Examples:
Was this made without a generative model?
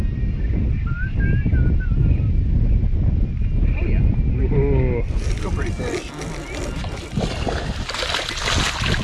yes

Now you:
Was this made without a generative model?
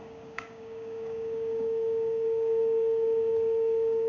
no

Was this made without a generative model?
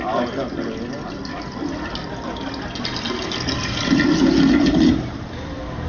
yes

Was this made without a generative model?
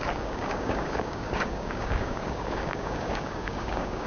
no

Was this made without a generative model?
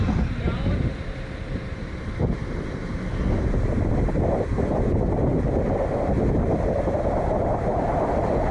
yes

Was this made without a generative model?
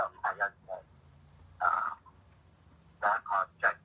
yes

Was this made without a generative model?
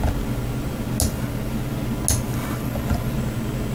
yes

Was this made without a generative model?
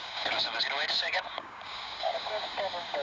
no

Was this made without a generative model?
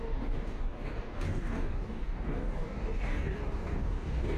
no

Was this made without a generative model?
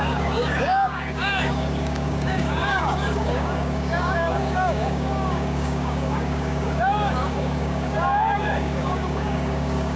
no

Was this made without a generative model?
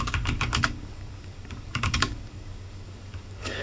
no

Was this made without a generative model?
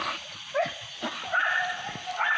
yes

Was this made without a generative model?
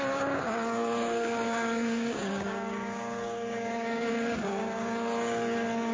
no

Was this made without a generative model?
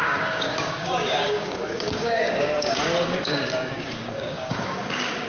no